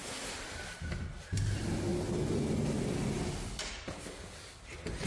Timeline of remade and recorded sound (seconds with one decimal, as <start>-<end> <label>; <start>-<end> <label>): 0.0-5.1 recorded